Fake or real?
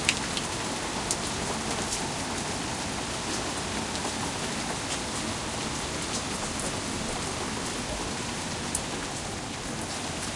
real